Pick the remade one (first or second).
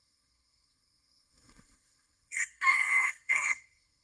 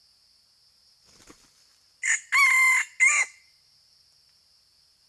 first